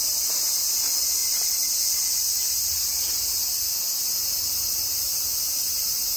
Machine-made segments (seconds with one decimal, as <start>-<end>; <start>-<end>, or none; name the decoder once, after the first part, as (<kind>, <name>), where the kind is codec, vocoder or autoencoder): none

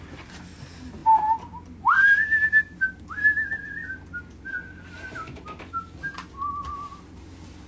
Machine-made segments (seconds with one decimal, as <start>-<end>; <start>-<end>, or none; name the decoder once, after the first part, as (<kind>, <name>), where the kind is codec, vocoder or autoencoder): none

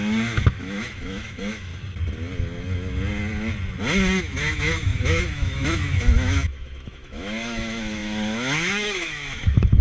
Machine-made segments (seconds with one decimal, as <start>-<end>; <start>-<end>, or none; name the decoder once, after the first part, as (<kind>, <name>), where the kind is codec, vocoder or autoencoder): 0.0-1.7 (autoencoder, DAC-VAE); 4.2-9.8